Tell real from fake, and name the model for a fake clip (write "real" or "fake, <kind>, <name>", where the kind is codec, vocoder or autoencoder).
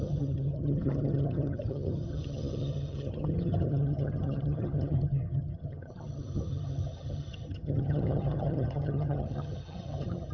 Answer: fake, vocoder, HiFi-GAN